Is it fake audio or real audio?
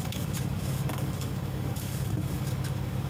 fake